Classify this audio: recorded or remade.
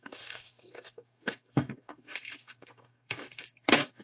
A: remade